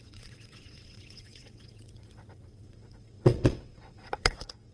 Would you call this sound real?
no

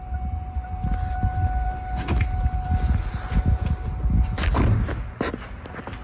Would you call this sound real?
yes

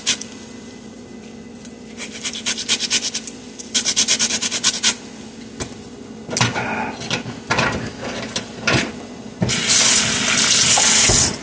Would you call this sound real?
yes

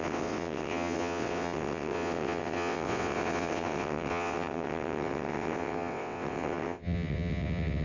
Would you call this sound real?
no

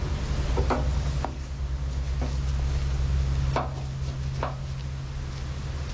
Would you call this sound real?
yes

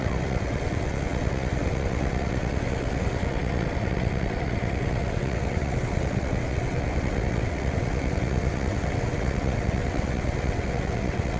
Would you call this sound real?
no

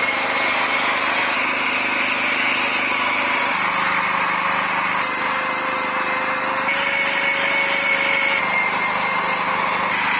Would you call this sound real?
yes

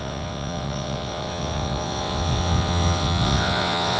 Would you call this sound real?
no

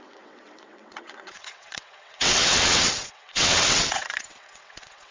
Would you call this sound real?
no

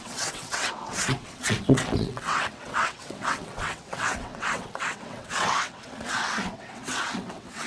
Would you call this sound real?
no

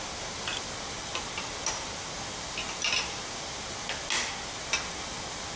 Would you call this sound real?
yes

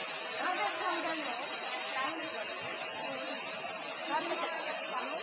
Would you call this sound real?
yes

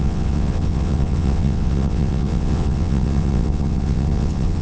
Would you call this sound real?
no